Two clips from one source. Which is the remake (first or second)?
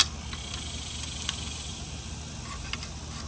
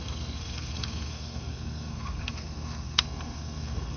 second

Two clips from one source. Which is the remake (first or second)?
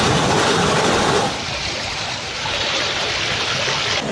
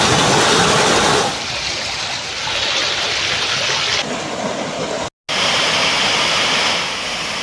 first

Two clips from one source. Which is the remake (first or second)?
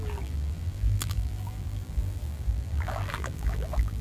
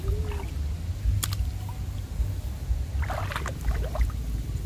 first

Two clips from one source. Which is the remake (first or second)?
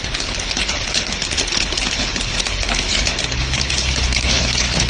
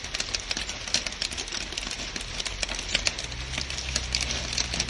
first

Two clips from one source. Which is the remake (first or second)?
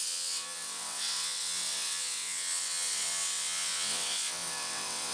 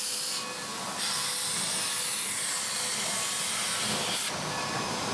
first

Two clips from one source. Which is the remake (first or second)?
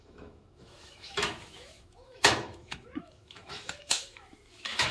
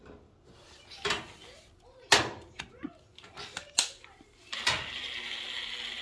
first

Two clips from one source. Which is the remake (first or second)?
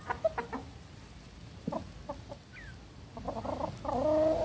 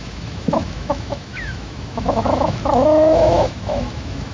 second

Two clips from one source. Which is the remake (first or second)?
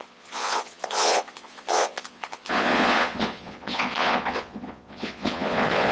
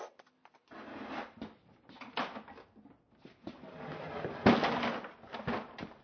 first